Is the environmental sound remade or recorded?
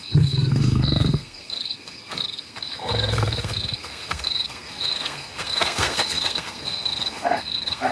remade